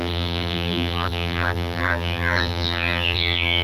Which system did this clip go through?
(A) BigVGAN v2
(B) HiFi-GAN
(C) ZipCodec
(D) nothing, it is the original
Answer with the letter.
A